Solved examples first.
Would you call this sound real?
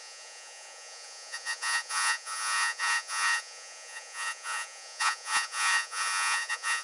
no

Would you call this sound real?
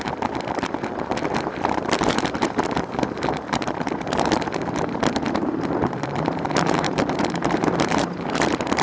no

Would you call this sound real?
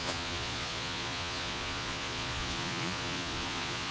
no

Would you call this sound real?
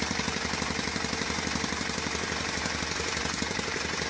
yes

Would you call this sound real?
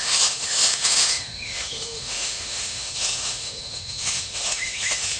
no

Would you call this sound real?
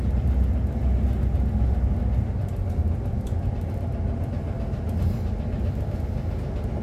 yes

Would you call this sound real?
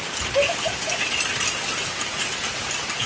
yes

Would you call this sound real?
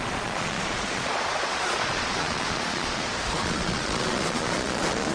no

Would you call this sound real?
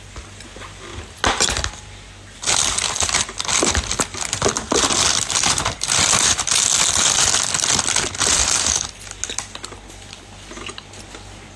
yes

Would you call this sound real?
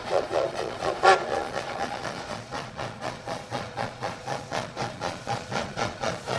no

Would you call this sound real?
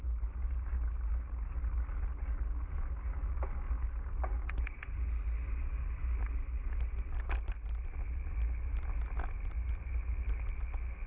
yes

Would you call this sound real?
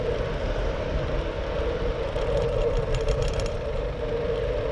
yes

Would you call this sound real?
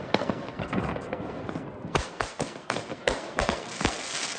no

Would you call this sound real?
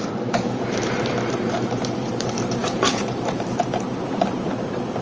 no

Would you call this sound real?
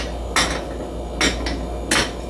yes